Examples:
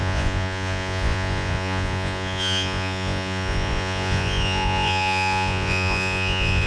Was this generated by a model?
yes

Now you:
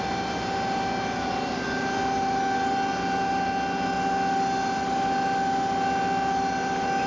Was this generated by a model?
no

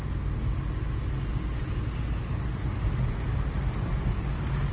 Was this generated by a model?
no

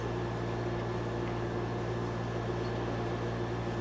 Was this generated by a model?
no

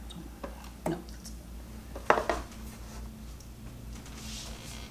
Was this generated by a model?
no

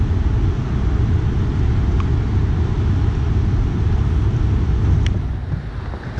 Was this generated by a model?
no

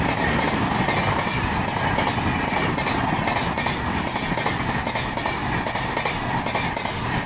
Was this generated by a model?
no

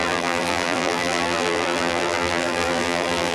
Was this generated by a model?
yes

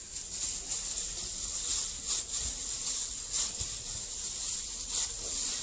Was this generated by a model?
no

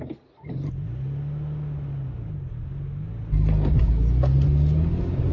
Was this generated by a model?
no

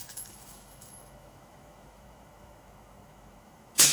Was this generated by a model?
yes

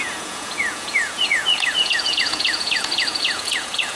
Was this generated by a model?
yes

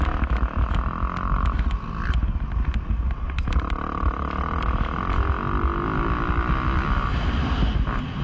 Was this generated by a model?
no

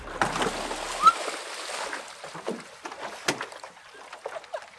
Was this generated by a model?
no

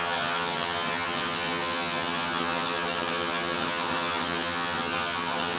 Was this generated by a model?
yes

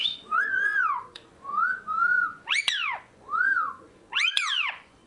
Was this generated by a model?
yes